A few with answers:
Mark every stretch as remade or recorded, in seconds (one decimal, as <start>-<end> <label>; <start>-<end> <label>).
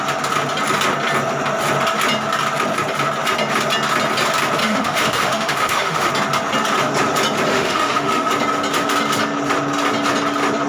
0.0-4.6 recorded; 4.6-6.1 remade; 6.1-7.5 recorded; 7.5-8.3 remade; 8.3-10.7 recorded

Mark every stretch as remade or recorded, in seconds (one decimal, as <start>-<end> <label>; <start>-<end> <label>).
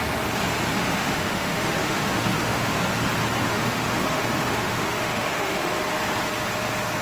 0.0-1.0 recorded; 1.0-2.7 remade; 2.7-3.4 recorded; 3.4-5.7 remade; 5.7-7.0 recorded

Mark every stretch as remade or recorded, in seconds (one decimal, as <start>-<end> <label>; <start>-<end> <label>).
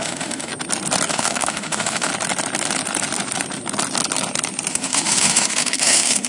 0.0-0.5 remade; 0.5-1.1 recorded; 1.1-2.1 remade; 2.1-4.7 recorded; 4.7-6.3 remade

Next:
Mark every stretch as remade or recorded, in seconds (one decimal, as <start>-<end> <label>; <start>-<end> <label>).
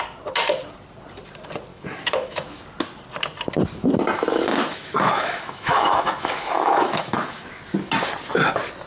0.0-1.7 recorded; 1.7-2.6 remade; 2.6-4.6 recorded; 4.6-7.6 remade; 7.6-8.9 recorded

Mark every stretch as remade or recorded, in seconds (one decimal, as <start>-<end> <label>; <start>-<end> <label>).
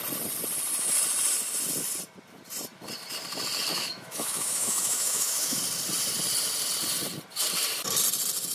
0.0-3.7 recorded; 3.7-5.6 remade; 5.6-8.5 recorded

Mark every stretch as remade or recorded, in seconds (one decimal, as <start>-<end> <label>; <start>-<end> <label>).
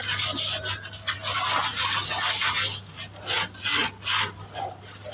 0.0-5.1 recorded